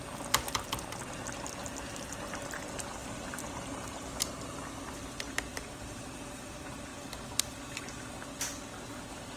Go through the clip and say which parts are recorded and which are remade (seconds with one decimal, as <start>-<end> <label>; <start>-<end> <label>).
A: 0.0-5.5 recorded; 5.5-6.0 remade; 6.0-6.9 recorded; 6.9-7.6 remade; 7.6-9.4 recorded

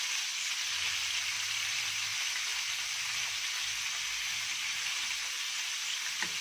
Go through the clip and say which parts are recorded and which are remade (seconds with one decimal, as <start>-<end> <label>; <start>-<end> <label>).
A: 0.0-2.5 recorded; 2.5-5.6 remade; 5.6-6.4 recorded

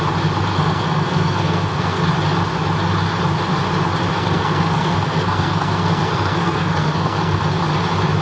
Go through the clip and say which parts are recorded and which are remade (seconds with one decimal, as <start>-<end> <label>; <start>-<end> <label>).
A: 0.0-0.5 recorded; 0.5-2.0 remade; 2.0-4.1 recorded; 4.1-7.4 remade; 7.4-8.2 recorded

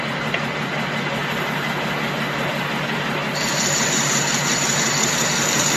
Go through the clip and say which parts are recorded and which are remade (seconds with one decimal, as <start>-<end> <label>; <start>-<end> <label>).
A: 0.0-5.8 recorded

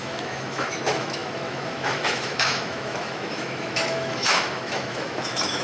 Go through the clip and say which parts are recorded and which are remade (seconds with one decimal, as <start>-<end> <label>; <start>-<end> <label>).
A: 0.0-5.6 remade

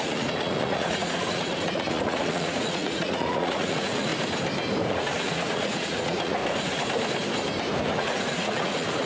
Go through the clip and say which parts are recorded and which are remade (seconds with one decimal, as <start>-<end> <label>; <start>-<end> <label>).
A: 0.0-4.1 remade; 4.1-4.9 recorded; 4.9-6.4 remade; 6.4-7.8 recorded; 7.8-9.1 remade

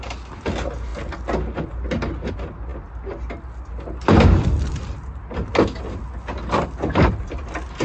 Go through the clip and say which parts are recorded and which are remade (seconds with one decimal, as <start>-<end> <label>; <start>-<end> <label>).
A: 0.0-7.8 recorded

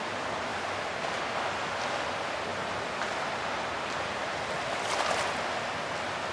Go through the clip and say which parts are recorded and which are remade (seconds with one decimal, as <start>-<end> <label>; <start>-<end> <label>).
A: 0.0-0.5 recorded; 0.5-1.2 remade; 1.2-6.3 recorded